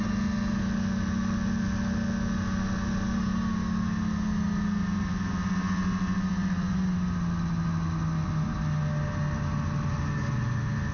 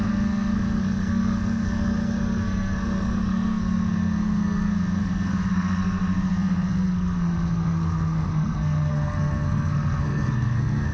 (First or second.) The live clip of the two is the first